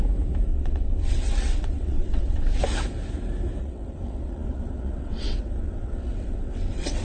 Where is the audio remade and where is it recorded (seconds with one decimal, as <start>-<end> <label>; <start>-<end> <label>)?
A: 0.0-0.5 recorded; 0.5-2.6 remade; 2.6-3.6 recorded; 3.6-7.0 remade